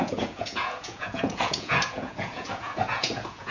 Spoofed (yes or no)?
yes